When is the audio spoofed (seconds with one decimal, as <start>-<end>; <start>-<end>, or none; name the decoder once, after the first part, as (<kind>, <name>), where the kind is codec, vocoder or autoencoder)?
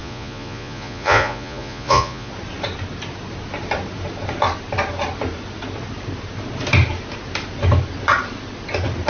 0.0-2.3 (vocoder, Vocos)